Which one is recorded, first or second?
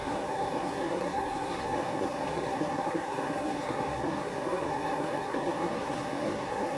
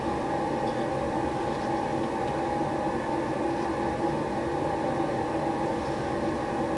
second